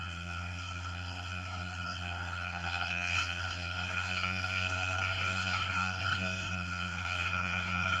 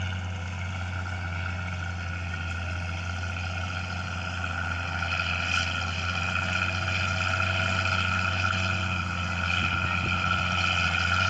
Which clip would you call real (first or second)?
second